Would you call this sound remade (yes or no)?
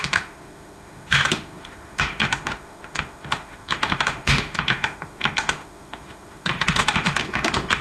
yes